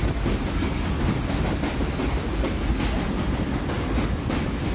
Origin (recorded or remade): recorded